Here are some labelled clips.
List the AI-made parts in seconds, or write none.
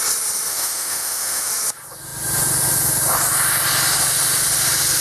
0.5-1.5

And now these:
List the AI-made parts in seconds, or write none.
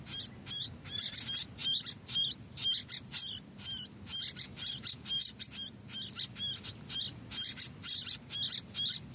none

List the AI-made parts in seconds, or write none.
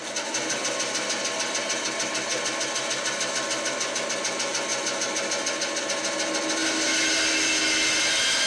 none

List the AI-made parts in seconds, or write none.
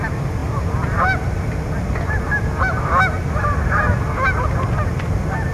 none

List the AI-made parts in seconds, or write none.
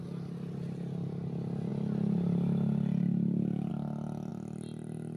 none